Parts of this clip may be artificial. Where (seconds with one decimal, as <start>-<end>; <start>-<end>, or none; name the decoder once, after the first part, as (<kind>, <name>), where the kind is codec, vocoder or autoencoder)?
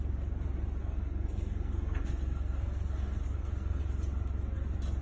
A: 0.8-3.8 (codec, SNAC)